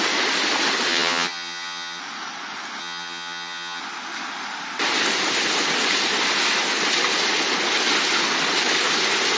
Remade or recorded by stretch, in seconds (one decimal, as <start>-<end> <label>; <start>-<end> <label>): 0.0-0.9 recorded; 0.9-2.0 remade; 2.0-2.8 recorded; 2.8-3.8 remade; 3.8-9.4 recorded